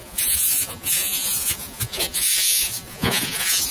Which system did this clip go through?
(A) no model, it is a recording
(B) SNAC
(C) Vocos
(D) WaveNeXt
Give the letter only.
C